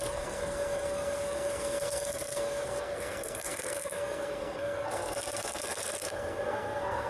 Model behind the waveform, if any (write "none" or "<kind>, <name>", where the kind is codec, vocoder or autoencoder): codec, SNAC